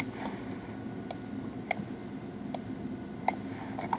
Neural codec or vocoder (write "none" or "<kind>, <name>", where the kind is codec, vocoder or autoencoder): none